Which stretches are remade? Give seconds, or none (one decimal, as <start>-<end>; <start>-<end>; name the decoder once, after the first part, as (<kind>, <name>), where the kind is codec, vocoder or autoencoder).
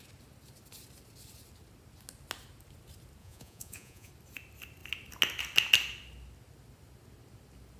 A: 3.2-4.1 (vocoder, Vocos)